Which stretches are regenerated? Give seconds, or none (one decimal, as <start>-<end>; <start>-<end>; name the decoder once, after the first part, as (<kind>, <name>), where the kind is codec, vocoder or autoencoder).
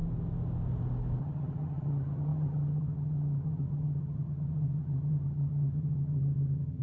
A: 1.2-6.8 (vocoder, HiFi-GAN)